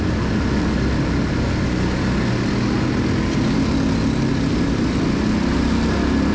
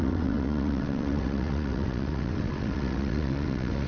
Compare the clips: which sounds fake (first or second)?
second